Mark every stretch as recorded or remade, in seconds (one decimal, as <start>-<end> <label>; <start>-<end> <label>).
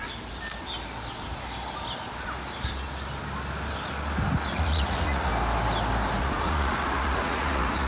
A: 0.0-4.5 recorded; 4.5-5.3 remade; 5.3-6.2 recorded; 6.2-7.9 remade